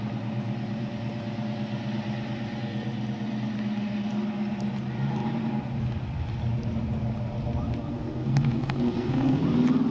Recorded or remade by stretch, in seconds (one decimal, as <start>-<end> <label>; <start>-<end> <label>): 0.0-7.8 recorded; 7.8-9.4 remade; 9.4-9.9 recorded